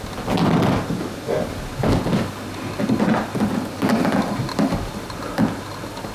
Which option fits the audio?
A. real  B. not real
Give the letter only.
A